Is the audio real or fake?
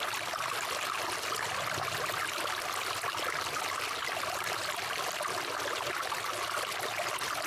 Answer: real